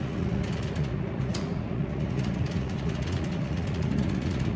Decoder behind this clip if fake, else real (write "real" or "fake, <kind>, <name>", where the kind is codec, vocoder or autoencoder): fake, vocoder, Vocos